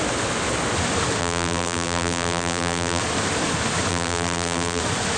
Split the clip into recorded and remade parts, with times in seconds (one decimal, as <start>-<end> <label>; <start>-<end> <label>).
0.0-1.2 recorded; 1.2-3.0 remade; 3.0-3.9 recorded; 3.9-4.8 remade; 4.8-5.2 recorded